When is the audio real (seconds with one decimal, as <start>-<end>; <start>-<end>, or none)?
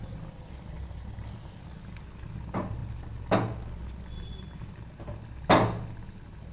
0.0-6.5